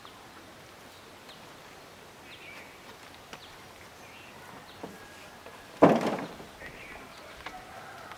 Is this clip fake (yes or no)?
no